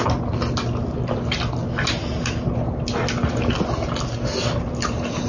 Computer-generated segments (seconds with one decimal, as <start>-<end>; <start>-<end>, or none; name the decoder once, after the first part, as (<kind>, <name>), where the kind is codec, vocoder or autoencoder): none